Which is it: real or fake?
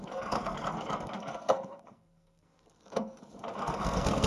fake